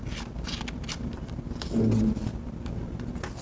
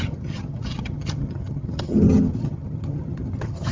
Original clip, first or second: first